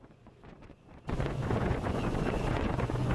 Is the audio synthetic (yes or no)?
yes